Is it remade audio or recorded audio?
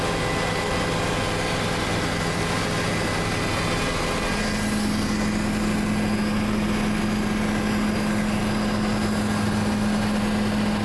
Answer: recorded